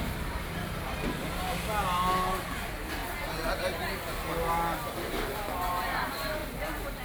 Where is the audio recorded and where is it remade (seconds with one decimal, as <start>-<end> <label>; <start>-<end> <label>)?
0.0-7.0 recorded